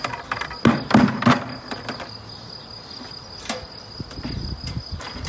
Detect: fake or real real